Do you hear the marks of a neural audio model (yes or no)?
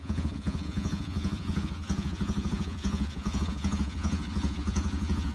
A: yes